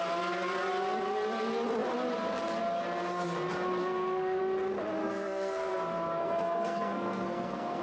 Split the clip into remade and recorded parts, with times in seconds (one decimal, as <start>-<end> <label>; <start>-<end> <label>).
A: 0.0-3.8 recorded; 3.8-4.4 remade; 4.4-5.0 recorded; 5.0-5.7 remade; 5.7-6.2 recorded; 6.2-7.8 remade